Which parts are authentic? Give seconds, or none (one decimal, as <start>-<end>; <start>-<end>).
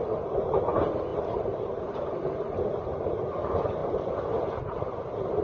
0.0-1.1; 3.1-5.4